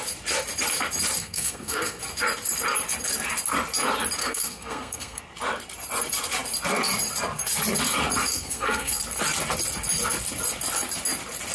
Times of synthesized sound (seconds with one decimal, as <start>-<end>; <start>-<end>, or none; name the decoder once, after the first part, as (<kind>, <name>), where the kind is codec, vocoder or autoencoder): 1.2-2.0 (codec, SNAC); 4.2-5.2; 8.3-9.0

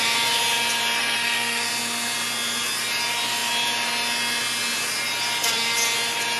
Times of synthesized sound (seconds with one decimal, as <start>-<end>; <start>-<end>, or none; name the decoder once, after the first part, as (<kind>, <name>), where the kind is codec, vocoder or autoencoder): 1.0-1.7 (codec, SNAC)

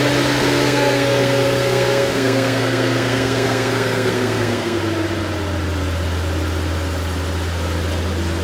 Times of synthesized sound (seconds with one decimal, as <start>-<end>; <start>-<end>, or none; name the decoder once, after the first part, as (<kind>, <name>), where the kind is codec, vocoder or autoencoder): 0.4-4.8 (codec, SNAC)

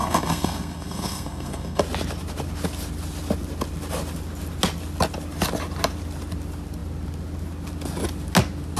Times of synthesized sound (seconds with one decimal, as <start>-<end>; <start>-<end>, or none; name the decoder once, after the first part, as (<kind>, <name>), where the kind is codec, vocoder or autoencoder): 0.0-1.8 (codec, SNAC)

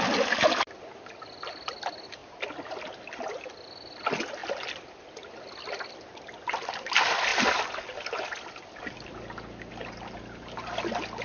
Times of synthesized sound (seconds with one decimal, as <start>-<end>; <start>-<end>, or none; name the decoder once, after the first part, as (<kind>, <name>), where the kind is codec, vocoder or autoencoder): none

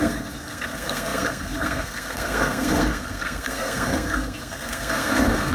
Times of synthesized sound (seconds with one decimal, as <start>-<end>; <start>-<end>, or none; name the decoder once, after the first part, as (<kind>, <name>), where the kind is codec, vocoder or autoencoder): 0.0-5.5 (codec, SNAC)

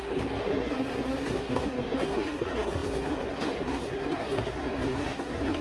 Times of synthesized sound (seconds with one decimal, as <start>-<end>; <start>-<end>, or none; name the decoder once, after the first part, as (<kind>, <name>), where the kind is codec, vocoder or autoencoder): 0.0-5.6 (codec, SNAC)

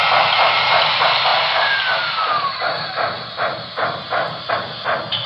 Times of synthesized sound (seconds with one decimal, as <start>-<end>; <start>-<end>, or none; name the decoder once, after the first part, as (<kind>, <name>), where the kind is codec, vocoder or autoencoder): none